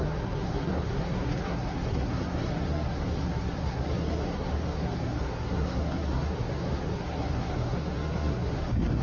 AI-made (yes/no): yes